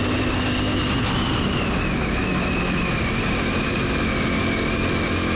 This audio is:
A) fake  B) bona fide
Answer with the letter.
B